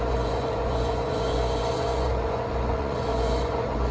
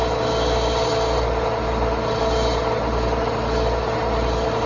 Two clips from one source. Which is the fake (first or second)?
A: first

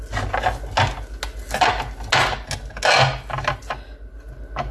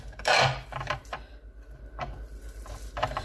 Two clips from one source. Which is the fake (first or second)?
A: second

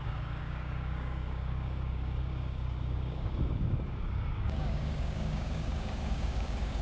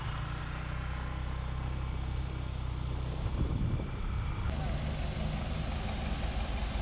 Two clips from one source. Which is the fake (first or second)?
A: first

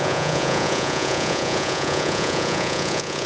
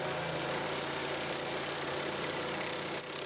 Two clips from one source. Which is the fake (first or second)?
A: first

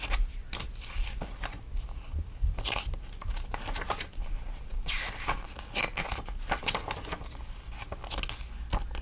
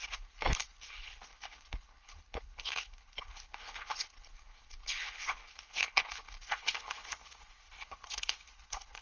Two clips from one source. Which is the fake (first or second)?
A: second